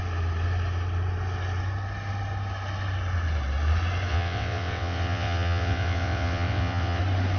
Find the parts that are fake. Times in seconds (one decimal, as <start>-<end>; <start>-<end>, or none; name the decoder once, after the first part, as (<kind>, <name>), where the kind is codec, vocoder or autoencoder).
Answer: 4.1-7.0 (vocoder, WaveNeXt)